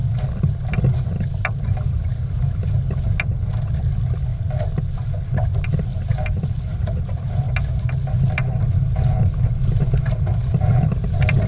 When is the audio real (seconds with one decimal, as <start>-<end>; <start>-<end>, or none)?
0.0-11.5